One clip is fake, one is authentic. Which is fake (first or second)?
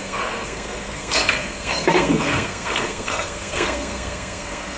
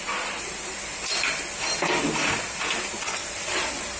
first